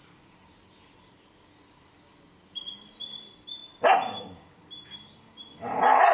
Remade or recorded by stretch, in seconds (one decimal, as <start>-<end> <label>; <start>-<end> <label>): 0.0-6.1 recorded